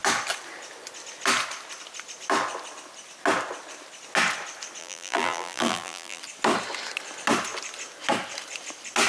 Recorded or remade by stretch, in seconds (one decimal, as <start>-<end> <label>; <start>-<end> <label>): 0.0-4.8 recorded; 4.8-6.2 remade; 6.2-9.1 recorded